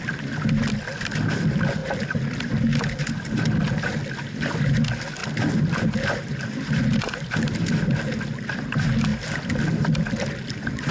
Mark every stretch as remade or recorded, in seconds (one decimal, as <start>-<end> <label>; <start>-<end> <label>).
0.0-10.9 recorded